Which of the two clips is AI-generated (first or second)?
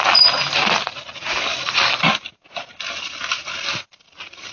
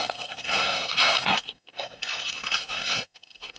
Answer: second